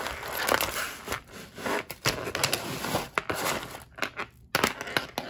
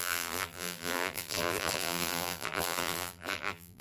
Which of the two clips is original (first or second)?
first